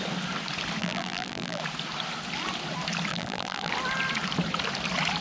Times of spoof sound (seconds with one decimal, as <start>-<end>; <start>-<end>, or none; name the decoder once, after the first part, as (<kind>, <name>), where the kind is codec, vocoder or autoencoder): 0.8-1.6 (vocoder, BigVGAN v2); 3.1-3.7